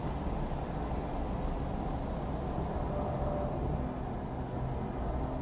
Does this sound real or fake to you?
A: real